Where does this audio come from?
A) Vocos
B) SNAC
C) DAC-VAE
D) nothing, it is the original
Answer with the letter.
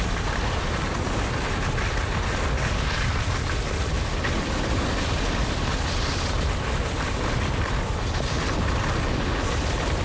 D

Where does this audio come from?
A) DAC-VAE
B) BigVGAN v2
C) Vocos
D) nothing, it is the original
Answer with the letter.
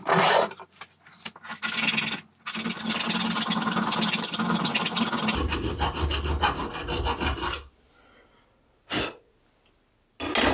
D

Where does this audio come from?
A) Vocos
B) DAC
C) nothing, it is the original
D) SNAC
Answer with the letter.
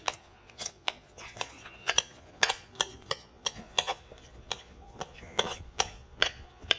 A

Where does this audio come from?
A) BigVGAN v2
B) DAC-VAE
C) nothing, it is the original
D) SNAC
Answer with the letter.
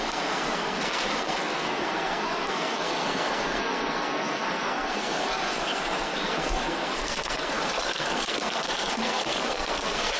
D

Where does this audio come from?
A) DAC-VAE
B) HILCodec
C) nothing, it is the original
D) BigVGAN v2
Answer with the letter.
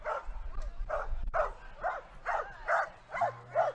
C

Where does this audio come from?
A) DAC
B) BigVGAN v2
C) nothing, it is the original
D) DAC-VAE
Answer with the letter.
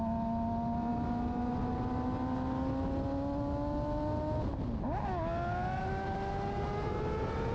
C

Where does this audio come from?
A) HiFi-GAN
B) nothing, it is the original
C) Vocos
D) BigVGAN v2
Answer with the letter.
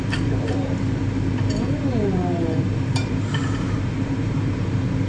D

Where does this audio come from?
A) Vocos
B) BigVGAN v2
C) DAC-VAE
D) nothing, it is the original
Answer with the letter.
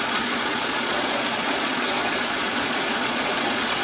A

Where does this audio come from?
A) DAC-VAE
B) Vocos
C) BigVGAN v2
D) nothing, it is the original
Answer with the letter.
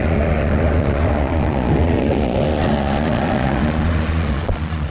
B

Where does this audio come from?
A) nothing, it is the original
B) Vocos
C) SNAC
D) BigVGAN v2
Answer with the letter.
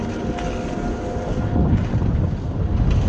A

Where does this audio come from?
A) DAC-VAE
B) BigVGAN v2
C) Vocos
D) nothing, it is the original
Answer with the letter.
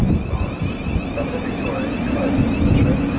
D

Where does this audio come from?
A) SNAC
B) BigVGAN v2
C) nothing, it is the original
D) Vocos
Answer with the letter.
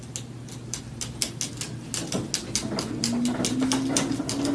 C